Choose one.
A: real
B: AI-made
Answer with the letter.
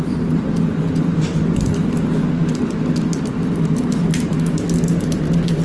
A